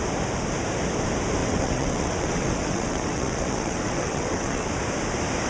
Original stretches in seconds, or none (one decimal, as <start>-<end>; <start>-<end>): 0.0-1.4; 4.7-5.5